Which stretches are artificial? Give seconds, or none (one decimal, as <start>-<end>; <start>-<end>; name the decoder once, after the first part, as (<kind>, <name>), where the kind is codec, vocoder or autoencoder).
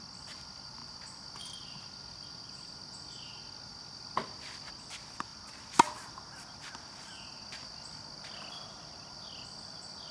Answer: none